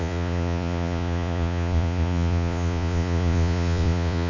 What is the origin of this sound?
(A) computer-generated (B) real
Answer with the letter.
A